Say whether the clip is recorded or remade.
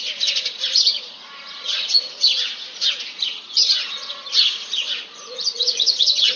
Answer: remade